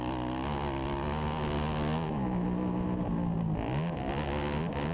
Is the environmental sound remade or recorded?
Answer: recorded